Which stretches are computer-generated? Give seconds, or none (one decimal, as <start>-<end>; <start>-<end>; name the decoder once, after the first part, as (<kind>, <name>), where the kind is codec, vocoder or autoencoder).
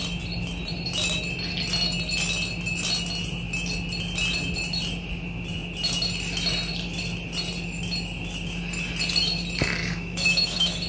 9.8-10.9 (autoencoder, DAC-VAE)